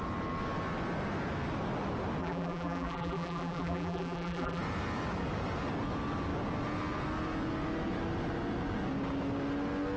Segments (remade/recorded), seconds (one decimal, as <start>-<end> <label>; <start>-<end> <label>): 0.0-2.2 recorded; 2.2-4.6 remade; 4.6-10.0 recorded